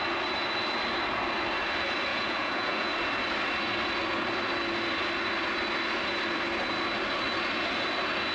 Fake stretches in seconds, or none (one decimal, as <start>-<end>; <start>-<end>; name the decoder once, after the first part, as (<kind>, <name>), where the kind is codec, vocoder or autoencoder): 2.1-2.9 (vocoder, Vocos)

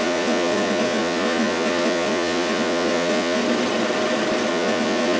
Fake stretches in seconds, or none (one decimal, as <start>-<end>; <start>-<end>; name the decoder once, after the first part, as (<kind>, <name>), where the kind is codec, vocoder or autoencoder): 0.0-3.4 (vocoder, Vocos); 4.5-5.2

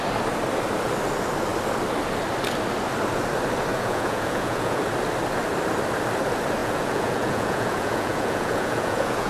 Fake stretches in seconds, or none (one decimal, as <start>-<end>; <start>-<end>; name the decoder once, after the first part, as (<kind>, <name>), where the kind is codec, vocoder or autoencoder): 3.7-4.8 (vocoder, Vocos); 6.6-9.3

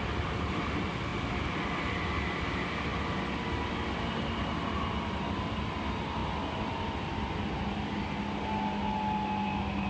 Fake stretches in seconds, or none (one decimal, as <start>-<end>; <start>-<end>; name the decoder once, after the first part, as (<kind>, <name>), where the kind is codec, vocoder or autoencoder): none